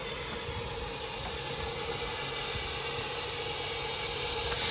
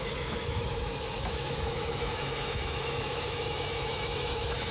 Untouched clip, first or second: first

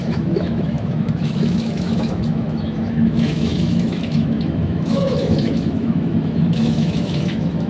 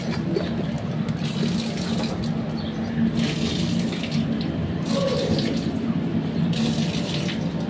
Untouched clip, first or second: second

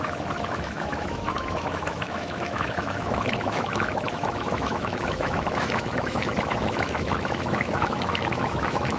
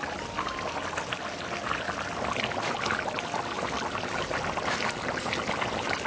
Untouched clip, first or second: second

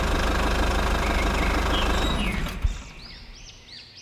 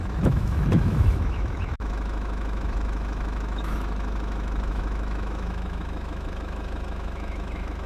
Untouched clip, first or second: first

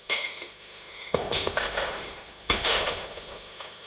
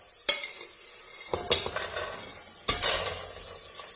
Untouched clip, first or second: second